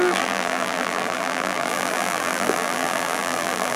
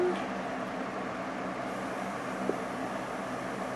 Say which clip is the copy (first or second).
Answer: first